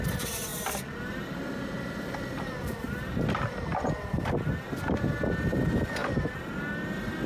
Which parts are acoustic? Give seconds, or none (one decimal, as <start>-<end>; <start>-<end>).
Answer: 0.0-7.3